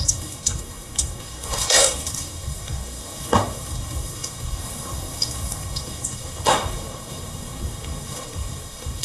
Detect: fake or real fake